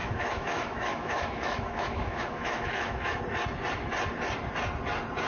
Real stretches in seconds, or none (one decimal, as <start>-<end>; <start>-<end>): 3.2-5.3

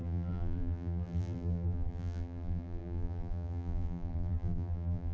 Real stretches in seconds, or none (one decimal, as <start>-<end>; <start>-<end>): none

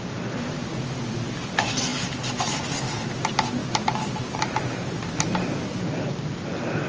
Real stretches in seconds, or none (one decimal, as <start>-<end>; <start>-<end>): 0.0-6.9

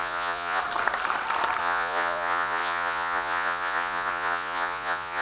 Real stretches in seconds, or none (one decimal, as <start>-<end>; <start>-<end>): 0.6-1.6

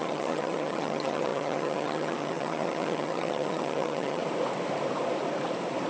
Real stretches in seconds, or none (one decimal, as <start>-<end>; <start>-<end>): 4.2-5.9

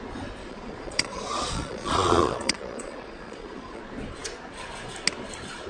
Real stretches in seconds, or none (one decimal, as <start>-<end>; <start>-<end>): 0.0-0.4; 3.8-5.7

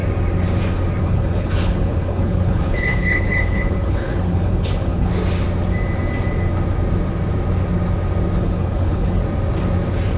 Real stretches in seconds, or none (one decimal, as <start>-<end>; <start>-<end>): 0.0-1.0; 5.1-8.4; 9.2-10.2